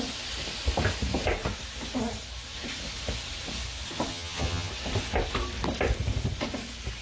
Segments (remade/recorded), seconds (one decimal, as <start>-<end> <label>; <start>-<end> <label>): 0.0-4.1 recorded; 4.1-4.7 remade; 4.7-7.0 recorded

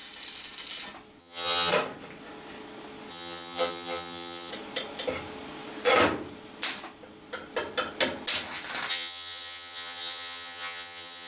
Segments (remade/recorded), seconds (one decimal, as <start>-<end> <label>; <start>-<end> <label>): 0.0-1.2 recorded; 1.2-1.7 remade; 1.7-3.1 recorded; 3.1-4.5 remade; 4.5-8.9 recorded; 8.9-11.3 remade